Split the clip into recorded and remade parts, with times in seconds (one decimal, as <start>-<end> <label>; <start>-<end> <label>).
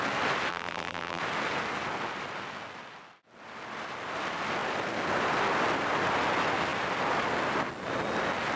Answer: 0.0-0.5 recorded; 0.5-1.2 remade; 1.2-8.6 recorded